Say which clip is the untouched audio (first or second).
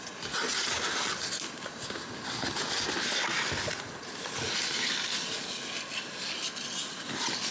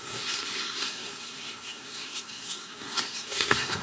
first